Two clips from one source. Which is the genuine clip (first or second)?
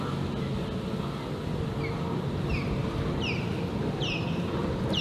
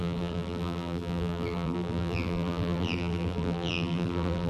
first